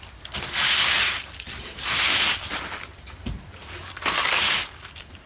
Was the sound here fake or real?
real